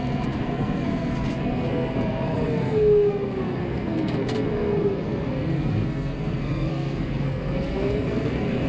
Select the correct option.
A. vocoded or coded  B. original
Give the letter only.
A